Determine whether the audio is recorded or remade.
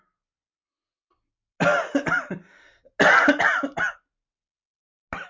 recorded